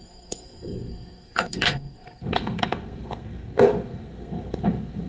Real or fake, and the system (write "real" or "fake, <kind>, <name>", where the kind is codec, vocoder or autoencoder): fake, codec, SNAC